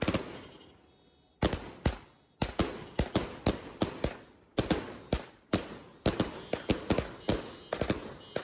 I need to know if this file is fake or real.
real